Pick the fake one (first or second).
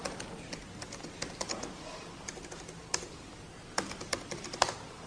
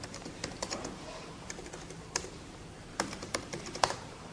second